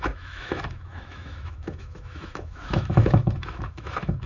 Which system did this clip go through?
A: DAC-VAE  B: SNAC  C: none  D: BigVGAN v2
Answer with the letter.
A